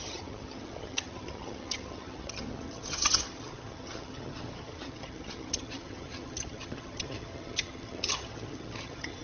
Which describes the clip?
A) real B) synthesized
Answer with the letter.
B